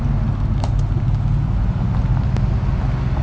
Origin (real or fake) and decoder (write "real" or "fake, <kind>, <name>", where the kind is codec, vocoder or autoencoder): real